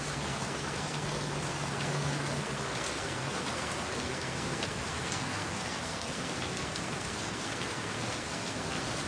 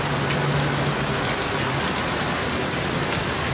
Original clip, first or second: second